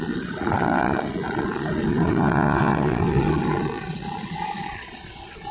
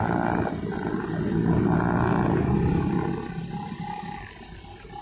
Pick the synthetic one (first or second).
first